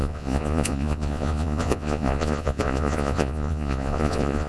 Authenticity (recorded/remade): remade